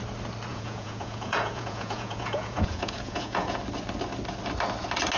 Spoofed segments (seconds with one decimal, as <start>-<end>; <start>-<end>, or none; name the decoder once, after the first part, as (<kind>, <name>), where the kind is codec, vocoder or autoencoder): 0.5-3.6 (vocoder, Vocos)